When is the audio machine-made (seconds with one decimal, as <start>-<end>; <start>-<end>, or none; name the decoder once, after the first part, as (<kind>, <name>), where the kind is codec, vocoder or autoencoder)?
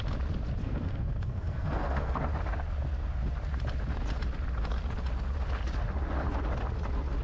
0.6-2.3 (codec, SNAC)